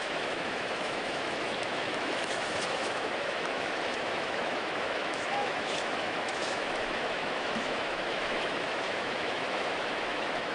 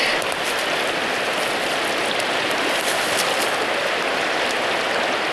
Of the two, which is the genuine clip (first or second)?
second